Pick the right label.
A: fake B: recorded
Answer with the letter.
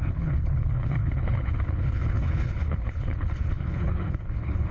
A